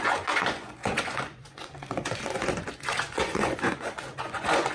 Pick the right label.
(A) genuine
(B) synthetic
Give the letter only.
B